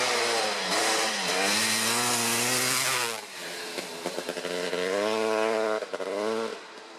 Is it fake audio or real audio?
real